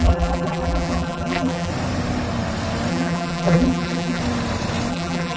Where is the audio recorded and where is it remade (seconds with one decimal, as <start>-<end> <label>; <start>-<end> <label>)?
0.0-1.7 remade; 1.7-2.9 recorded; 2.9-4.2 remade; 4.2-4.9 recorded; 4.9-5.4 remade